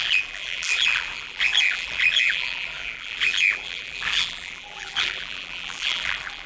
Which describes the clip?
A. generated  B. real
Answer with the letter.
A